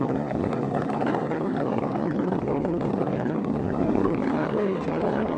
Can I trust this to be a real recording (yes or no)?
no